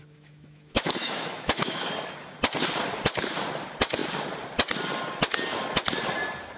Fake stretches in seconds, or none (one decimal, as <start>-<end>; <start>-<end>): 0.0-1.9